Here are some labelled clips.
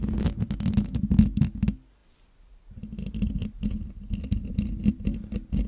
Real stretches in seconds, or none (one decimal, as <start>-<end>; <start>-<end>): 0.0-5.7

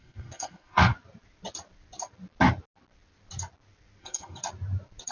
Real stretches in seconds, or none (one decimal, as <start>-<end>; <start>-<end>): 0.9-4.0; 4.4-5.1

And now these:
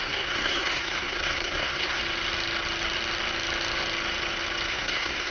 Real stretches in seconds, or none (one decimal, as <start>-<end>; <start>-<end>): 2.0-4.7